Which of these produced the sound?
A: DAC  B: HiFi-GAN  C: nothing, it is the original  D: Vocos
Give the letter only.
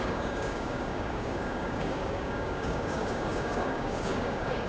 A